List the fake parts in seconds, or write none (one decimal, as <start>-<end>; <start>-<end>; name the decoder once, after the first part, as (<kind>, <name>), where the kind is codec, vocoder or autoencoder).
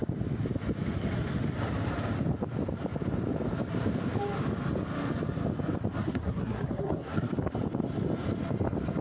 6.0-7.3 (codec, SNAC)